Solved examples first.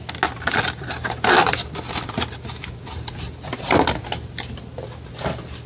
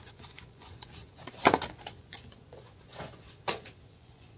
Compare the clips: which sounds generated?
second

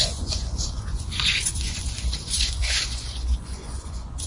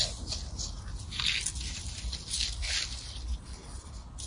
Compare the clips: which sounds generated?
first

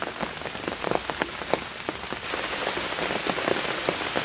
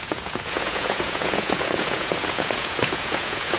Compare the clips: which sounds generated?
second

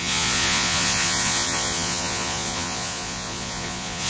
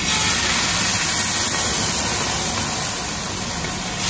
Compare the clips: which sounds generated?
first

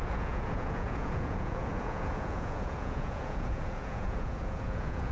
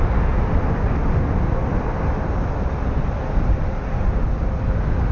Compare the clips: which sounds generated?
first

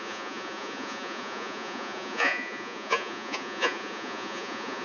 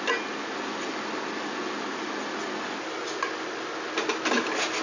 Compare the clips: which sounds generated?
first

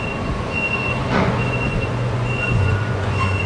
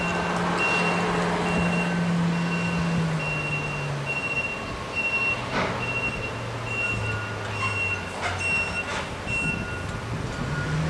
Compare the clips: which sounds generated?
first